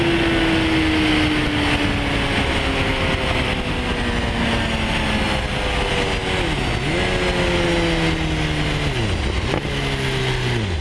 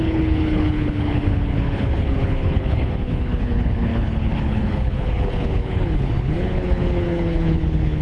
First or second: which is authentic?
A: first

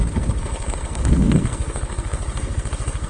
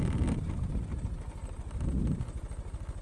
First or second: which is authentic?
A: second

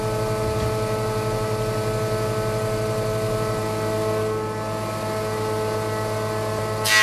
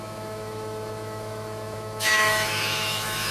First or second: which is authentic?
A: first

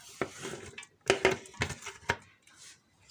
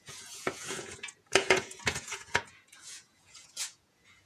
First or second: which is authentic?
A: first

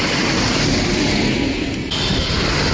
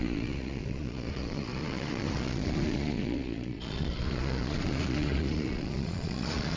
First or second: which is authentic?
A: first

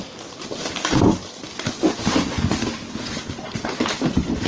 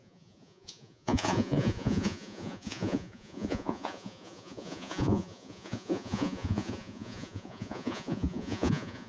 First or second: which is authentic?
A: first